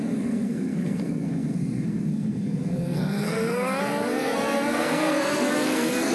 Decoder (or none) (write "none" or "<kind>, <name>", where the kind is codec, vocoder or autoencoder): codec, SNAC